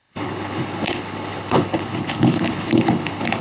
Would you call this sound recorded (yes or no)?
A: no